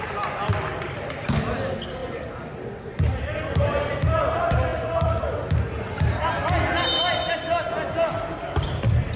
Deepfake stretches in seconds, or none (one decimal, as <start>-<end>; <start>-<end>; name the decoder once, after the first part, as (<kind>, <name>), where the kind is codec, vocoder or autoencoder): 0.0-2.0 (vocoder, BigVGAN v2); 3.6-4.7; 6.2-9.2